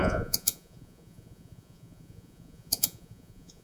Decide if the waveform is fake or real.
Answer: fake